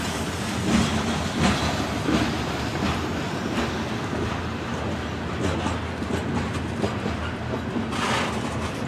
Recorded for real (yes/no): yes